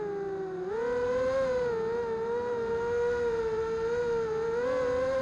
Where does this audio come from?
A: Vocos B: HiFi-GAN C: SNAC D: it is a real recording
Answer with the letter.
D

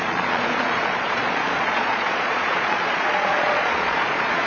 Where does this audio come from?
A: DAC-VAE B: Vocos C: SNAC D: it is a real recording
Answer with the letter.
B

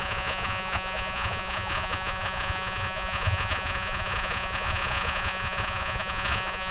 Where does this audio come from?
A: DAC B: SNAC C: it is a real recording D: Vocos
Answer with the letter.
D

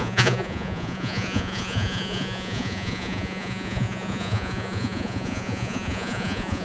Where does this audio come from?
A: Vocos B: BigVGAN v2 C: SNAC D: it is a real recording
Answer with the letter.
A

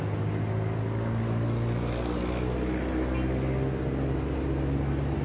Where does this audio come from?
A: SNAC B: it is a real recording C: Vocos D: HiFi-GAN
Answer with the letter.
B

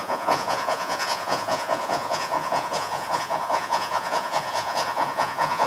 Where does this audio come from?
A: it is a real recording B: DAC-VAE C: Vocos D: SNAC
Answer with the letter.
C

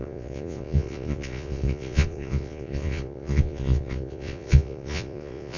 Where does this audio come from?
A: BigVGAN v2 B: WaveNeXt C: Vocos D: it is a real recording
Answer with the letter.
C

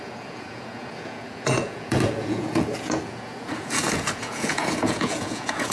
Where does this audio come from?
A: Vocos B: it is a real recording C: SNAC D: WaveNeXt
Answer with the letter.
A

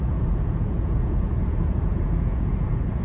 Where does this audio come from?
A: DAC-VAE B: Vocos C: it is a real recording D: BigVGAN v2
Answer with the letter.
B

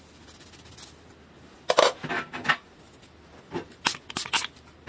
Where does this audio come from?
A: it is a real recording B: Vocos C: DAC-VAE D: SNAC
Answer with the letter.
A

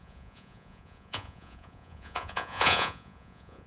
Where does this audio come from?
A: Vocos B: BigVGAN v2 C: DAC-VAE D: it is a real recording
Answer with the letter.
A